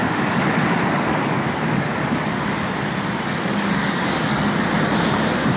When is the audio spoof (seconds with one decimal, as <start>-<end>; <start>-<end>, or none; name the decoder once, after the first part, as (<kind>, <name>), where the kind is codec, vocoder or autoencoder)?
0.0-2.6 (codec, DAC); 3.5-4.6

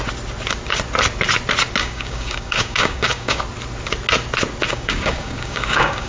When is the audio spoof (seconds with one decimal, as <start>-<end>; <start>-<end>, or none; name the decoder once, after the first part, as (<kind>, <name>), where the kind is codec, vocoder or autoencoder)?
1.8-3.4 (codec, DAC); 4.7-6.1

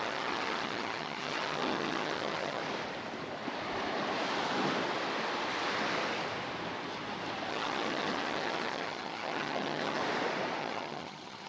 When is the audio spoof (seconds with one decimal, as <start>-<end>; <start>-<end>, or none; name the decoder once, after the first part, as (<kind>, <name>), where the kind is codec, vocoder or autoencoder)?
0.0-2.6 (vocoder, HiFi-GAN); 7.5-10.0; 10.6-11.5

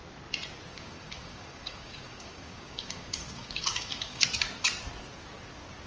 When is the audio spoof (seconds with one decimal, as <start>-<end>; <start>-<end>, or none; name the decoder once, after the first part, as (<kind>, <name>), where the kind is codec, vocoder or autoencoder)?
0.7-4.2 (codec, DAC)